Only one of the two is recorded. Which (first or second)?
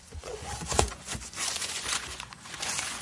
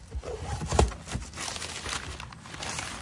second